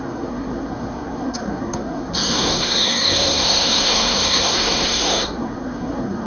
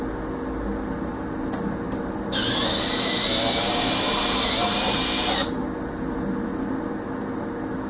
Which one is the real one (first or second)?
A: second